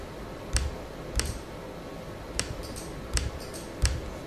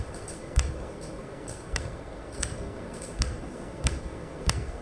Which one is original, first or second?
first